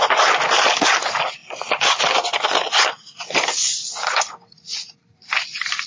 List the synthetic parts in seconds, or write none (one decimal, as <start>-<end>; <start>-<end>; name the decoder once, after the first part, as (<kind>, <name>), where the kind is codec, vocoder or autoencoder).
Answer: none